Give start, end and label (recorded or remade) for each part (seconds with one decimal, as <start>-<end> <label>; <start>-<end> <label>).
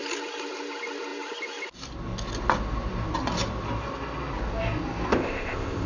0.0-5.1 recorded; 5.1-5.9 remade